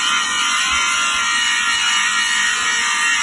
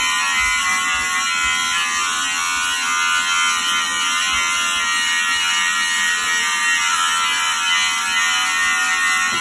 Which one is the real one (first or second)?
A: second